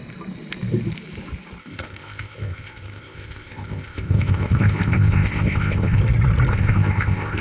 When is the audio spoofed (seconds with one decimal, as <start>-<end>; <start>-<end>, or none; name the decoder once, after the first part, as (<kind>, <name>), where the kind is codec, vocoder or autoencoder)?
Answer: 1.6-6.0 (codec, ZipCodec); 6.5-7.4